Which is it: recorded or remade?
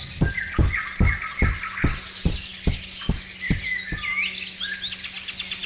recorded